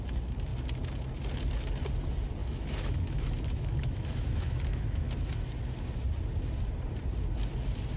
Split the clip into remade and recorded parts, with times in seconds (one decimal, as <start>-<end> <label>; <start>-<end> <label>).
0.0-2.4 recorded; 2.4-5.1 remade; 5.1-8.0 recorded